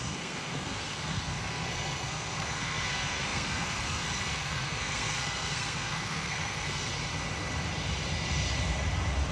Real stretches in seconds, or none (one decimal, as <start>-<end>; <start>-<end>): 6.9-9.3